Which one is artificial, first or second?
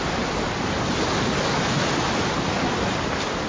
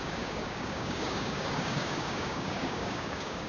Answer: second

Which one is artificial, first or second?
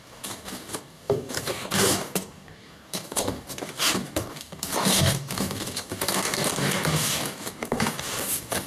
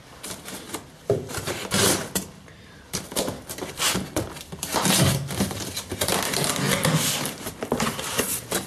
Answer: first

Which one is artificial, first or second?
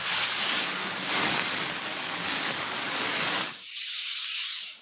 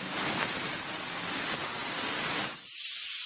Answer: first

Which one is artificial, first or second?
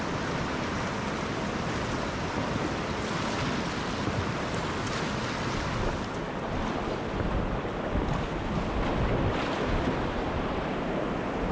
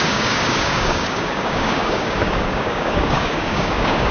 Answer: second